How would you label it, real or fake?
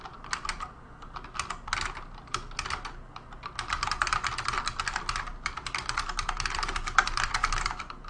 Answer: real